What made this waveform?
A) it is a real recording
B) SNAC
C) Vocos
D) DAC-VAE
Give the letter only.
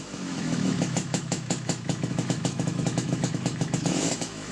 D